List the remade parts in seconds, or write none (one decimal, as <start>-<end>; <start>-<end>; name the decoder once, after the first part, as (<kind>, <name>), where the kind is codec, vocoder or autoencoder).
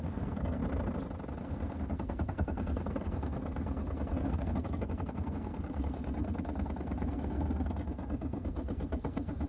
0.0-0.6 (codec, SNAC); 1.4-9.5